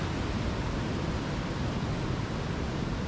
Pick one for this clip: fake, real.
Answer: real